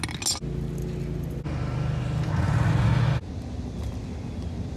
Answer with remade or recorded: recorded